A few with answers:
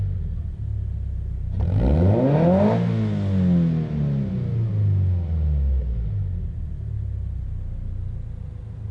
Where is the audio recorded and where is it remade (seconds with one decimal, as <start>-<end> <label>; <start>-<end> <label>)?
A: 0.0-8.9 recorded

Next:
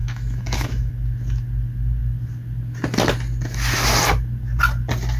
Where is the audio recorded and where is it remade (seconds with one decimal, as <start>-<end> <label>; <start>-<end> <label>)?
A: 0.0-0.9 remade; 0.9-5.2 recorded

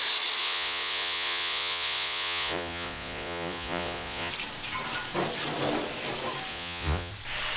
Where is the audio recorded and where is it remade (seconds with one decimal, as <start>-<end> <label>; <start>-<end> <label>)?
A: 0.0-0.4 recorded; 0.4-4.3 remade; 4.3-6.5 recorded; 6.5-7.1 remade; 7.1-7.6 recorded

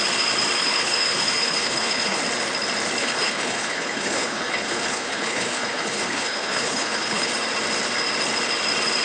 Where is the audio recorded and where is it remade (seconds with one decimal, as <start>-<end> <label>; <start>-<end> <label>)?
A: 0.0-0.6 recorded; 0.6-2.2 remade; 2.2-3.0 recorded; 3.0-7.3 remade; 7.3-9.0 recorded